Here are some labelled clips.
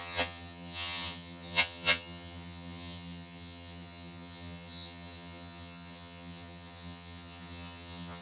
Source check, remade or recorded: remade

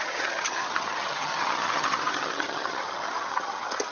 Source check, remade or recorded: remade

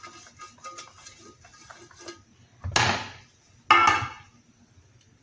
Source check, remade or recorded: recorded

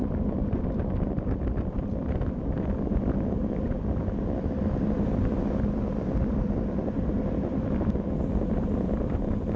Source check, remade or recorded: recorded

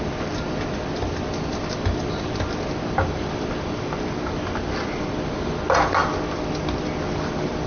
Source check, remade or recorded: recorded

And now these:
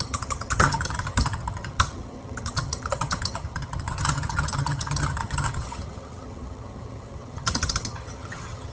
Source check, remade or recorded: remade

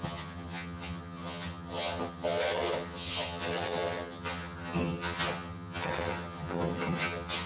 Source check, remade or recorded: remade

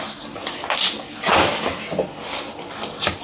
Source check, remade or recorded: recorded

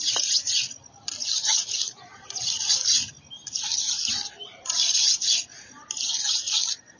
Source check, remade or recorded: recorded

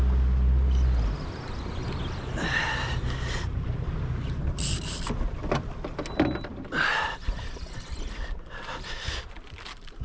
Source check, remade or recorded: recorded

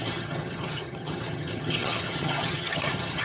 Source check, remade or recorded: remade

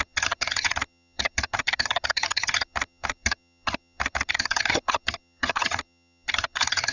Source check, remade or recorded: remade